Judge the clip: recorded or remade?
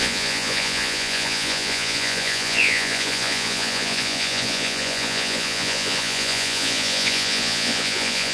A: remade